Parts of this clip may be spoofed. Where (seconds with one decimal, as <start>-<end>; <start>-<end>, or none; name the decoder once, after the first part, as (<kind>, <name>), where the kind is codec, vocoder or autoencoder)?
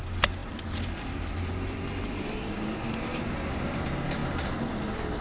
none